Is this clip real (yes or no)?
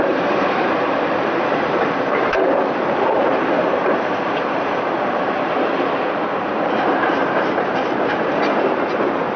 no